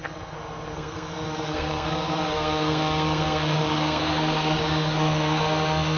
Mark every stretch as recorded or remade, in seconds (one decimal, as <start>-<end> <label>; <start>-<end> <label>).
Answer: 0.0-6.0 remade